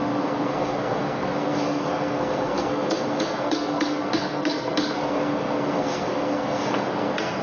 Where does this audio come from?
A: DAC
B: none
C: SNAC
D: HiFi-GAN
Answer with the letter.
C